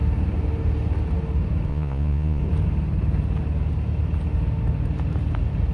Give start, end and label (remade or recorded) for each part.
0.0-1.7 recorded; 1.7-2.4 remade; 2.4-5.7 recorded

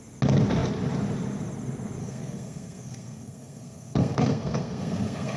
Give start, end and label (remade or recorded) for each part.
0.0-2.0 recorded; 2.0-5.4 remade